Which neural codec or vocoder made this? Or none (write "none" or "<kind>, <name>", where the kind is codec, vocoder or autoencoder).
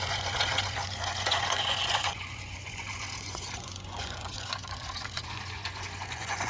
vocoder, Vocos